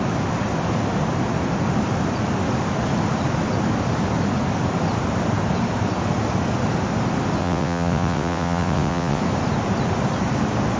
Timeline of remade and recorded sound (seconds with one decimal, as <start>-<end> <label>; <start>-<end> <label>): 0.0-7.4 recorded; 7.4-9.2 remade; 9.2-10.8 recorded